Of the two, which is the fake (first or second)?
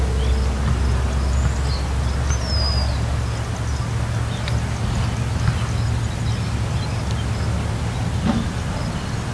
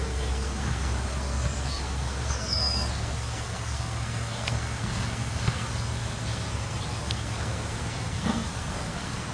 second